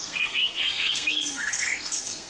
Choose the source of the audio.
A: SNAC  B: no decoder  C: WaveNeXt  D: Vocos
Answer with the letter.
A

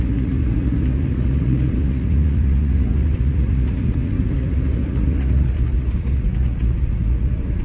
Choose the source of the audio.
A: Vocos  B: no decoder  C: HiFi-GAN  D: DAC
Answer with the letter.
A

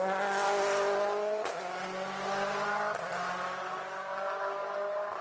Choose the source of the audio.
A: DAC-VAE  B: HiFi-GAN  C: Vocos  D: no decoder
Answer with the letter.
D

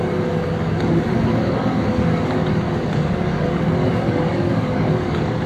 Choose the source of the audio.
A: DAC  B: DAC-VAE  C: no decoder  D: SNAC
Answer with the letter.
A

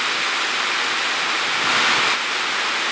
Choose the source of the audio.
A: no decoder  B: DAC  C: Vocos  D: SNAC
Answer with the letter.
A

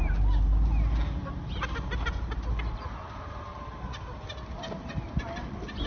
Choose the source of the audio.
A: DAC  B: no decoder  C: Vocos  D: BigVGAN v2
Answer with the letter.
B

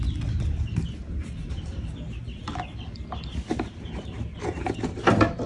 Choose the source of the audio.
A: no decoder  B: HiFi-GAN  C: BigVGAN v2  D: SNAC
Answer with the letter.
A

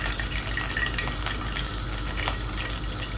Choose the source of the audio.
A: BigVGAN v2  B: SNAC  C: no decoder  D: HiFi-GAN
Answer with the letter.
C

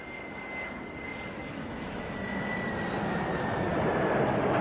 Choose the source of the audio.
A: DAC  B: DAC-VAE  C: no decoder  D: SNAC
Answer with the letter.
C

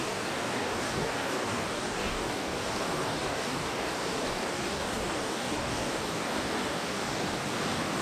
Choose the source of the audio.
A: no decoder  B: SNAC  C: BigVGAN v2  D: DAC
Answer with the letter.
D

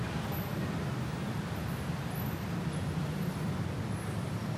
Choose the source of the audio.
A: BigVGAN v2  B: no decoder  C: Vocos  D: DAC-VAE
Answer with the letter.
B